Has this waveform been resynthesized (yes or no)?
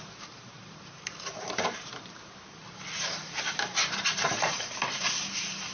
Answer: yes